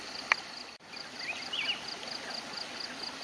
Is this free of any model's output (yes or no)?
yes